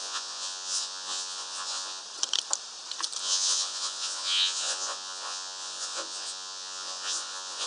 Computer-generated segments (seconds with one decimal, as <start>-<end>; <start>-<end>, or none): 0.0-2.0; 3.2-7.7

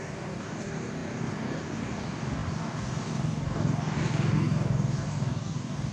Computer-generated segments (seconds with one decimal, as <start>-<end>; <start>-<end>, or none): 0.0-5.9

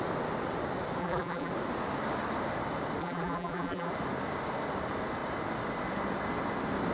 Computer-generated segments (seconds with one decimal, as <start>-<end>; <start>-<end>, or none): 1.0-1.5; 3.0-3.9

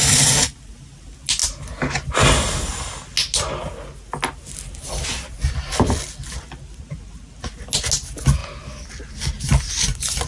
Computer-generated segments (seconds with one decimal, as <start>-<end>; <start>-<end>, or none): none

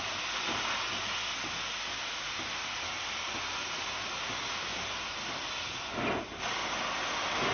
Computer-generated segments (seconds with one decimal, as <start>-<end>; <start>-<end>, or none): none

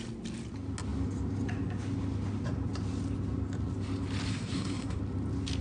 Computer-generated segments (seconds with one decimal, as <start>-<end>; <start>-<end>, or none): 4.3-5.0

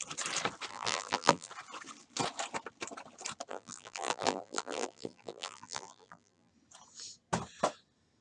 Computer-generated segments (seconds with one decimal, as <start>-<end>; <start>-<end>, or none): 0.7-1.5; 3.5-6.5

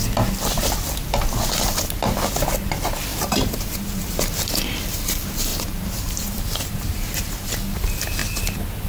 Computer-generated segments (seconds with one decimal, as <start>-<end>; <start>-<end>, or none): 3.1-4.2; 5.5-7.5